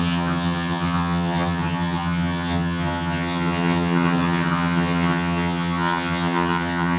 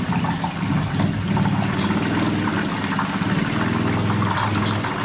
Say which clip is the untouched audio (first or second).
second